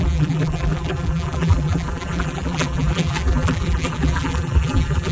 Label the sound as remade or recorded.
remade